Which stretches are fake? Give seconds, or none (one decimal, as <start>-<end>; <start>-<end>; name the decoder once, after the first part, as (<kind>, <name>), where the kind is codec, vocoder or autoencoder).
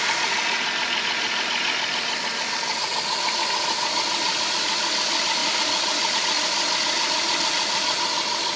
none